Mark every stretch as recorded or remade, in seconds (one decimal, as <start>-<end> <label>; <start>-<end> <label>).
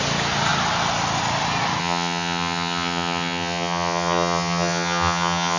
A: 0.0-1.8 recorded; 1.8-5.6 remade